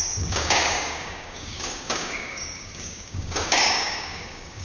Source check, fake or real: fake